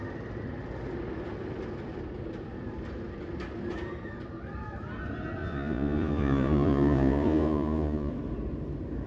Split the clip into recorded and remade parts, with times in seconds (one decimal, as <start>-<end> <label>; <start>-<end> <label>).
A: 0.0-5.4 recorded; 5.4-8.1 remade; 8.1-9.1 recorded